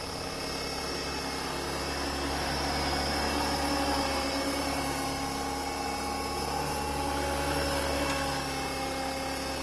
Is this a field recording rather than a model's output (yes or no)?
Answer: yes